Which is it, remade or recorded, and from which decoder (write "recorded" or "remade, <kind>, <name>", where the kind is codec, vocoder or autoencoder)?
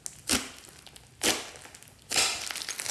recorded